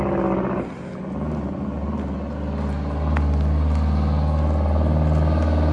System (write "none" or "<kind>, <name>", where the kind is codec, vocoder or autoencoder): none